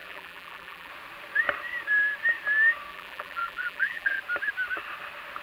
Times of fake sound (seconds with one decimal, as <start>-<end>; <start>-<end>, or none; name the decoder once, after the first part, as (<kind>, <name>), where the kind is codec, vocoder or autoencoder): 0.0-0.9 (vocoder, BigVGAN v2); 2.9-4.2